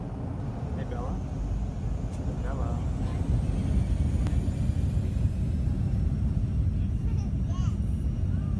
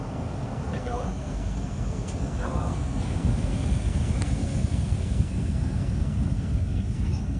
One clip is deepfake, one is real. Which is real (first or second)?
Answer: first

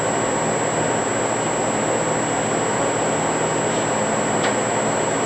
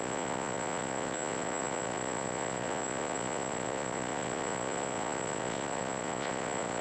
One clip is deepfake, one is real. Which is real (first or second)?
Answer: first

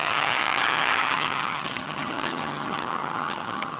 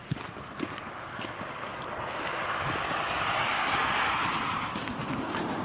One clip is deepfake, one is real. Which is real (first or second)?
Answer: second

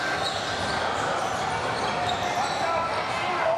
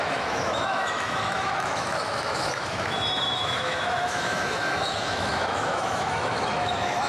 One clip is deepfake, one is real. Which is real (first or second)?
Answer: first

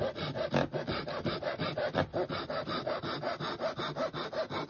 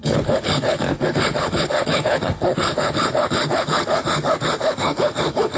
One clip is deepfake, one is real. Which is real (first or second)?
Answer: first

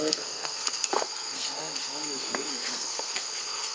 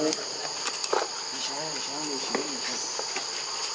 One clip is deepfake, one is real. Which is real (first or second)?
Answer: second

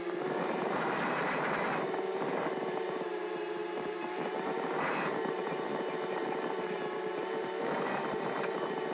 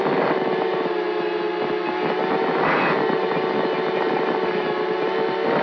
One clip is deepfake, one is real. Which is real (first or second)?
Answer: second